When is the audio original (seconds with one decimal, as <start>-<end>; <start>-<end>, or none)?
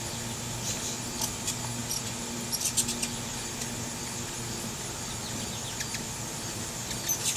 0.0-7.4